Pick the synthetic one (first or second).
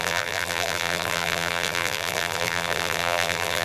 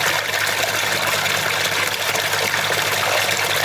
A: first